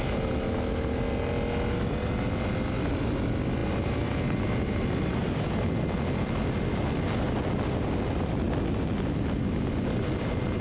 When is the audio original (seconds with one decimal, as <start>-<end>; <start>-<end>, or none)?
0.0-10.6

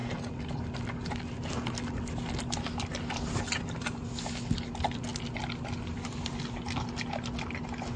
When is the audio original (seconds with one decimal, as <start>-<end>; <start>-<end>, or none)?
0.0-8.0